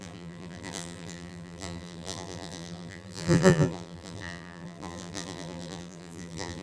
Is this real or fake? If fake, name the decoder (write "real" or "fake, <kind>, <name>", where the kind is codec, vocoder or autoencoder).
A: fake, vocoder, BigVGAN v2